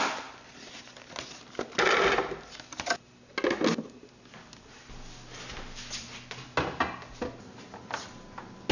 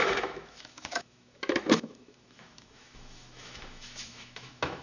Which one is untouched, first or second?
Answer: first